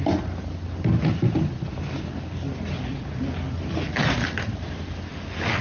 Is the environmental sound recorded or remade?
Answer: recorded